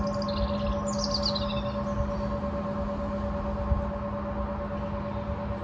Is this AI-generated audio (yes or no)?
no